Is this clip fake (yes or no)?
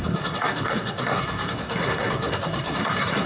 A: yes